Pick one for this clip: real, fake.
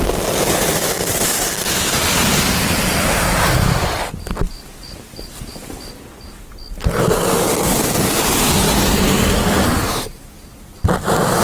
real